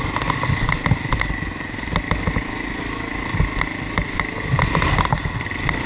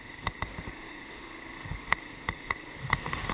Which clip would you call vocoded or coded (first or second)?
second